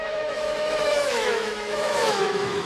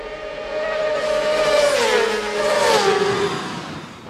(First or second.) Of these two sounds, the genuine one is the second